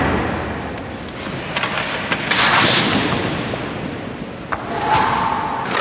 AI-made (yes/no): no